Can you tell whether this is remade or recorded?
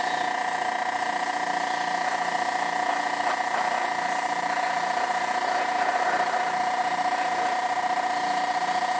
recorded